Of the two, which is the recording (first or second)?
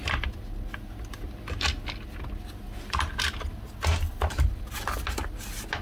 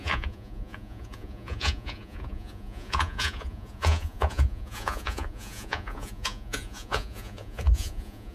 first